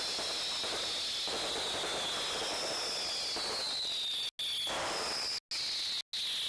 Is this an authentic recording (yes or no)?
yes